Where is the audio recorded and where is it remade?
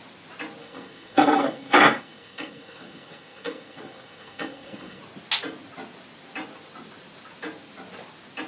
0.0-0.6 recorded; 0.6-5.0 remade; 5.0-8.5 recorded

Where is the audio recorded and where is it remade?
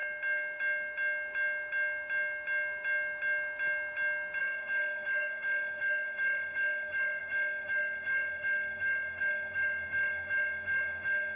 0.0-4.4 recorded; 4.4-11.4 remade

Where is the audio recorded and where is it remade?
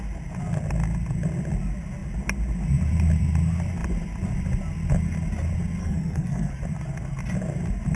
0.0-5.8 recorded; 5.8-6.5 remade; 6.5-8.0 recorded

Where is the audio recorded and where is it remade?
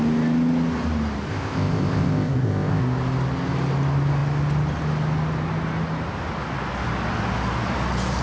0.0-1.3 recorded; 1.3-2.8 remade; 2.8-8.2 recorded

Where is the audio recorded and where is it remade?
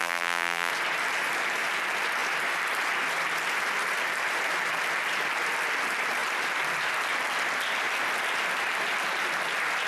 0.0-0.7 remade; 0.7-9.9 recorded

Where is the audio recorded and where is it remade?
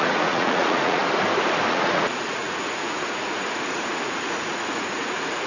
0.0-1.0 remade; 1.0-1.7 recorded; 1.7-5.5 remade